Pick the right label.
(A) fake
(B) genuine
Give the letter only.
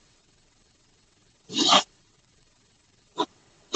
A